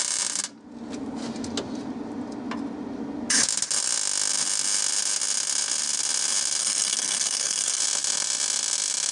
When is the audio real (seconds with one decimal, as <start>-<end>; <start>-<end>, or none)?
0.0-6.6; 7.8-9.1